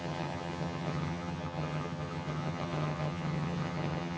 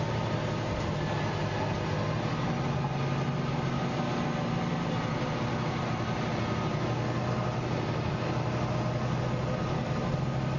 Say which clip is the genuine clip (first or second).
second